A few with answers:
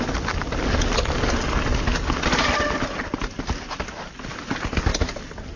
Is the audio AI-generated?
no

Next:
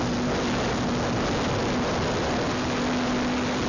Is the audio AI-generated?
no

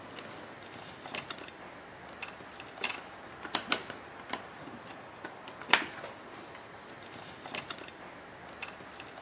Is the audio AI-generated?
no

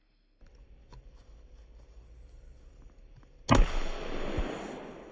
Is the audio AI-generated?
no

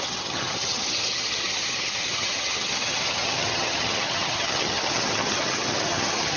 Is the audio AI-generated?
yes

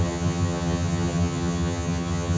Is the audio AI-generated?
yes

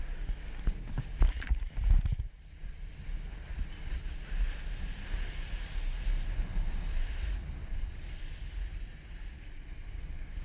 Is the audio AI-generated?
no